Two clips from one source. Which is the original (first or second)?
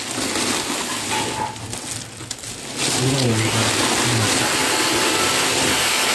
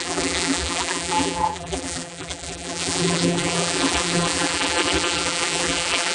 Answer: first